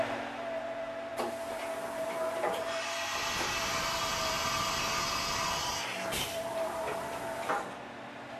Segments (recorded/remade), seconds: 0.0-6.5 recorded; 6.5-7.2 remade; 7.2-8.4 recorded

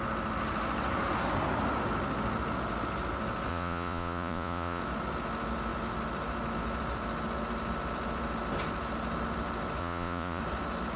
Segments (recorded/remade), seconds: 0.0-3.5 recorded; 3.5-4.8 remade; 4.8-9.8 recorded; 9.8-10.4 remade; 10.4-11.0 recorded

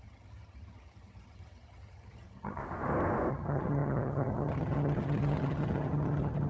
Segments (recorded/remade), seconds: 0.0-2.6 remade; 2.6-3.3 recorded; 3.3-6.5 remade

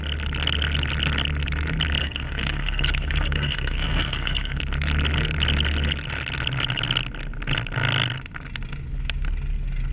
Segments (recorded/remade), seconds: 0.0-2.0 recorded; 2.0-4.6 remade; 4.6-9.9 recorded

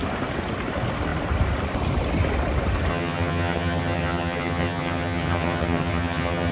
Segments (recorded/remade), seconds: 0.0-2.9 recorded; 2.9-6.5 remade

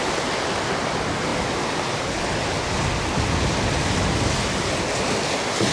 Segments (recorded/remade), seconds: 0.0-5.7 recorded